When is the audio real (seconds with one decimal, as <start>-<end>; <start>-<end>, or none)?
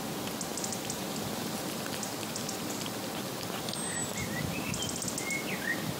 0.0-4.0; 4.7-6.0